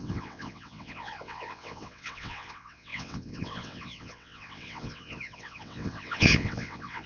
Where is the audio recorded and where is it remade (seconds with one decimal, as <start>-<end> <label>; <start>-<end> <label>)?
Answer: 0.0-7.1 remade